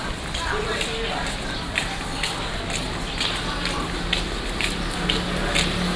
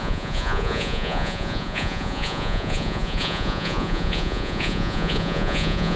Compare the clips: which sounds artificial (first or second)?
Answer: second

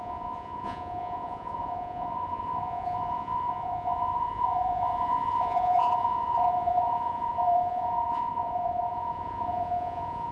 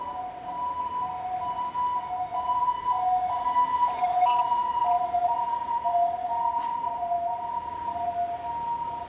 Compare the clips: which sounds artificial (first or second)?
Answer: first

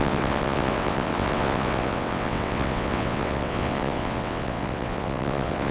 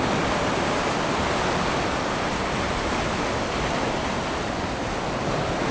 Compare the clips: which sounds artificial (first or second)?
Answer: first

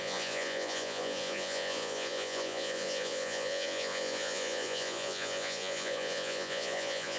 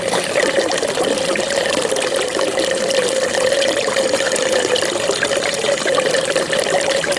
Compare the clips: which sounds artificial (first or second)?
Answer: first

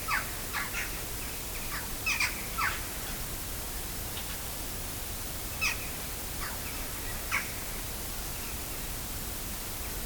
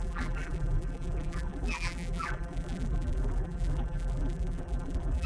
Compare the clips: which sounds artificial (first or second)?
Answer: second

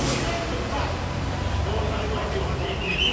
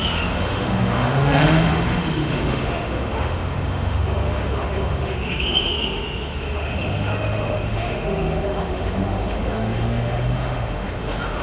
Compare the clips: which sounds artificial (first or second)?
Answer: second